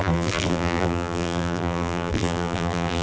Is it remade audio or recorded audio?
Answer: remade